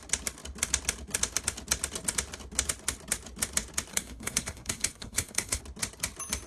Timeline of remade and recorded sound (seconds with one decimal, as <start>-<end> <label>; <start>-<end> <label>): 0.0-3.9 recorded; 3.9-5.6 remade; 5.6-6.5 recorded

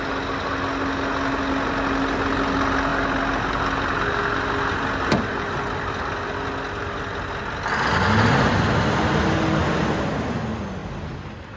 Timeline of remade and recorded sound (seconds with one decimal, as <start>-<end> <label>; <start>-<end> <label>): 0.0-11.6 recorded

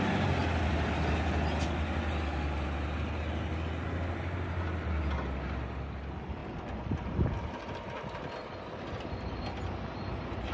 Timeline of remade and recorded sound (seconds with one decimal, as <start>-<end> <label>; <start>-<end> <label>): 0.0-10.5 recorded

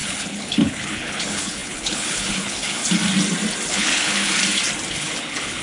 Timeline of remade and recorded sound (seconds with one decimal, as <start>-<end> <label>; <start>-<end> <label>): 0.0-2.8 remade; 2.8-3.7 recorded; 3.7-4.4 remade; 4.4-4.9 recorded; 4.9-5.6 remade

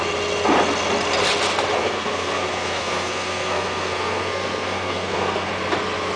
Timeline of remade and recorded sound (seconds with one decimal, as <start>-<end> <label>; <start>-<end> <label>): 0.0-1.8 recorded; 1.8-5.5 remade; 5.5-6.2 recorded

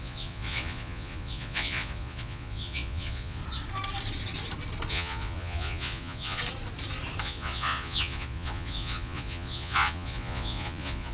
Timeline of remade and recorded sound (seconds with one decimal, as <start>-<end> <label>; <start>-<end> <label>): 0.0-3.4 remade; 3.4-4.9 recorded; 4.9-6.4 remade; 6.4-7.2 recorded; 7.2-11.1 remade

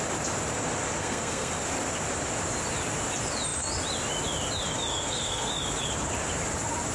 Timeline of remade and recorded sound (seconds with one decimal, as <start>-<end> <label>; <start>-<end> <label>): 0.0-1.0 recorded; 1.0-1.5 remade; 1.5-4.9 recorded; 4.9-5.5 remade; 5.5-6.9 recorded

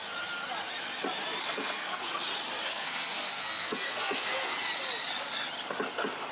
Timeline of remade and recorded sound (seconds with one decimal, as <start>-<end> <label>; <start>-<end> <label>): 0.0-1.4 recorded; 1.4-2.1 remade; 2.1-2.7 recorded; 2.7-4.3 remade; 4.3-6.3 recorded